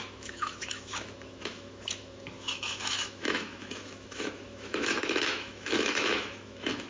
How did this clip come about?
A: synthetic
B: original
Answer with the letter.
A